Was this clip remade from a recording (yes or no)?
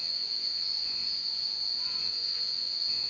yes